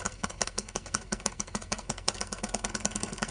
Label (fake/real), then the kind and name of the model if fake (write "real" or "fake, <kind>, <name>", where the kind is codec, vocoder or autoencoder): fake, codec, SNAC